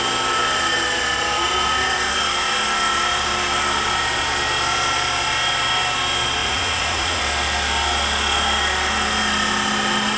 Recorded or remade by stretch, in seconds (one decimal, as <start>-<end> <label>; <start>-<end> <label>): 0.0-6.4 recorded; 6.4-7.2 remade; 7.2-10.2 recorded